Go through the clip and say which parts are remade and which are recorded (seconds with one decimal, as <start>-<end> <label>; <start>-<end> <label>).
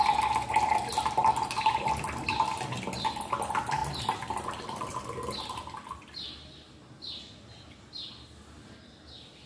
0.0-3.8 recorded; 3.8-4.9 remade; 4.9-9.5 recorded